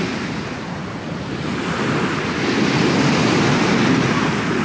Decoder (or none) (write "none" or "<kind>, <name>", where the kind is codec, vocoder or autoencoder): none